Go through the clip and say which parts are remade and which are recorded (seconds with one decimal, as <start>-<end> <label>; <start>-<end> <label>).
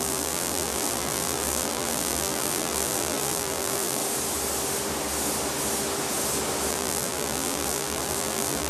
0.0-4.0 remade; 4.0-6.7 recorded; 6.7-8.7 remade